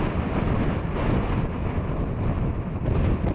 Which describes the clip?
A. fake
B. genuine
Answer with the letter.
B